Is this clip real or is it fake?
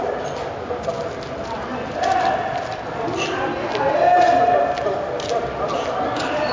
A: real